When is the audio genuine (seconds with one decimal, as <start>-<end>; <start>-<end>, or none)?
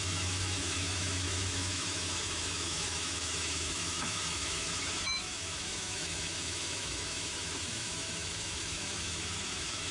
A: none